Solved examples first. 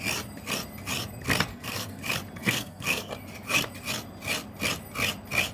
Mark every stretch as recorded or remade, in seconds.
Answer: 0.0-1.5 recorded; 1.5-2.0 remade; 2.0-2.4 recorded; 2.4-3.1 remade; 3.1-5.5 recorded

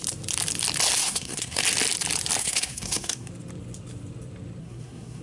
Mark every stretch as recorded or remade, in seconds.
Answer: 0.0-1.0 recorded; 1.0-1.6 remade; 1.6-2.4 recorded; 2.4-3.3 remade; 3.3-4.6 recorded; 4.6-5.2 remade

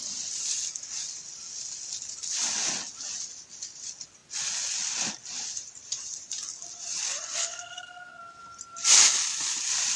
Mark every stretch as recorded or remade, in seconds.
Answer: 0.0-7.4 recorded; 7.4-8.2 remade; 8.2-10.0 recorded

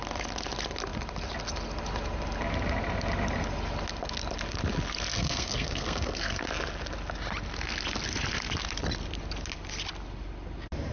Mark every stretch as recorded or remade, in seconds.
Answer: 0.0-5.1 recorded; 5.1-6.4 remade; 6.4-10.9 recorded

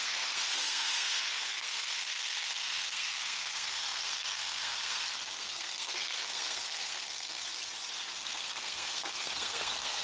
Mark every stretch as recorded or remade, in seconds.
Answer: 0.0-7.5 remade; 7.5-8.2 recorded; 8.2-10.0 remade